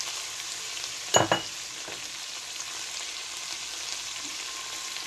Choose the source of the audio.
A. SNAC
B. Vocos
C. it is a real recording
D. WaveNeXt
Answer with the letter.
C